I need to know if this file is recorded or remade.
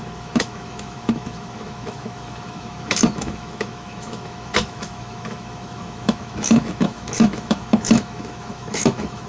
remade